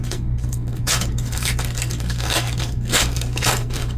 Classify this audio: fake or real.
fake